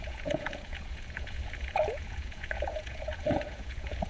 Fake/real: fake